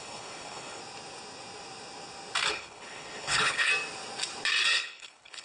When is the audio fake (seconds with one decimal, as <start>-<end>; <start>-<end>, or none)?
0.0-0.8; 2.5-3.7; 4.7-5.4